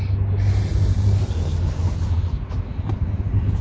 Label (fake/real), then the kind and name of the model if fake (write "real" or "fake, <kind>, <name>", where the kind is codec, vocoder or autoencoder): real